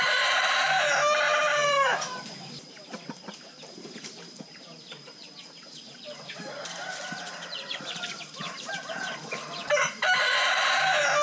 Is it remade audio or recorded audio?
remade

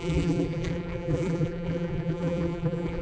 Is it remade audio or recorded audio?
remade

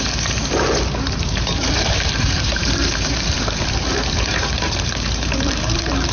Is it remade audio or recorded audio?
remade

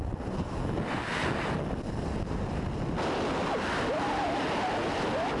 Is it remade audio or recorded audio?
recorded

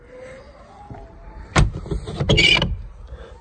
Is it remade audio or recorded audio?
recorded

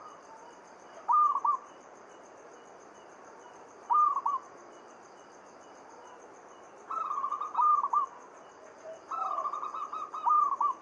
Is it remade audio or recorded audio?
remade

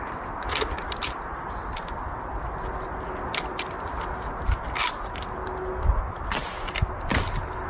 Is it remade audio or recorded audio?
recorded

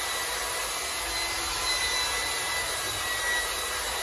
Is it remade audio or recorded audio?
recorded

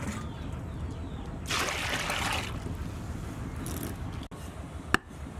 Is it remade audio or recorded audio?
recorded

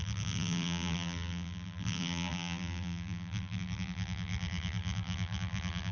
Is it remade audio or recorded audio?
remade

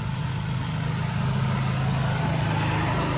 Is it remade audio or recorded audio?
remade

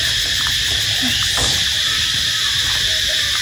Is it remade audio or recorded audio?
recorded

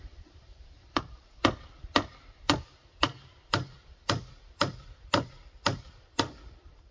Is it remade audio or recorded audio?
remade